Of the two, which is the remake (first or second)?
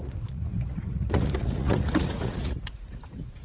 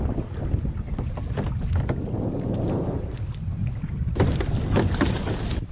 first